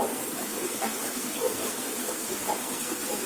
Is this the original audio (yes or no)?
no